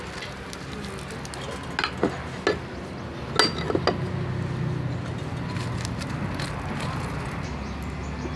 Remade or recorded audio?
recorded